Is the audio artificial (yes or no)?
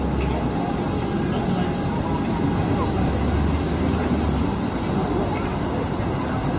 no